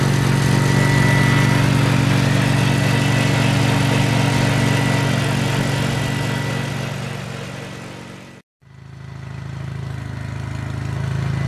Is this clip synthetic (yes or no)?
no